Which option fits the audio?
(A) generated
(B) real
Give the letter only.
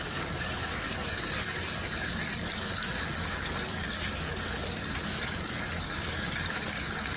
A